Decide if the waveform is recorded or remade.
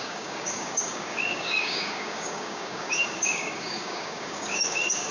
remade